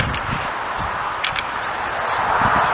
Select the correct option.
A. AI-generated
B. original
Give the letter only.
B